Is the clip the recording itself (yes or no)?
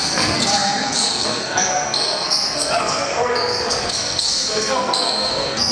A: no